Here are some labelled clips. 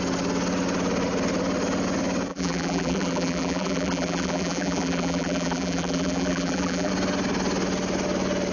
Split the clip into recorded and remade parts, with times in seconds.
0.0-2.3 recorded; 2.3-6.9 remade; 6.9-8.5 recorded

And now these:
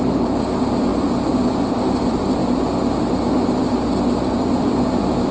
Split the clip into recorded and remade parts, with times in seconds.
0.0-0.9 remade; 0.9-1.7 recorded; 1.7-2.4 remade; 2.4-4.4 recorded; 4.4-5.3 remade

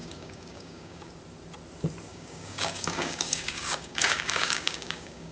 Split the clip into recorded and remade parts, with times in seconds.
0.0-1.1 remade; 1.1-2.1 recorded; 2.1-5.3 remade

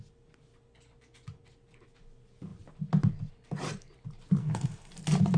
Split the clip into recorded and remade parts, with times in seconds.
0.0-4.4 recorded; 4.4-4.9 remade; 4.9-5.4 recorded

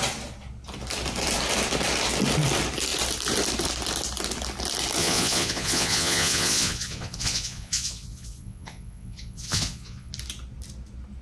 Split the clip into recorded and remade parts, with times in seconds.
0.0-5.0 recorded; 5.0-10.1 remade; 10.1-11.2 recorded

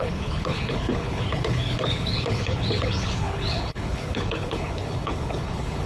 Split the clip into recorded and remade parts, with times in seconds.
0.0-5.9 remade